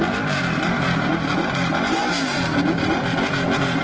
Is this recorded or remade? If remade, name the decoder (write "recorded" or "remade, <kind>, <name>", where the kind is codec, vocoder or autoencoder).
recorded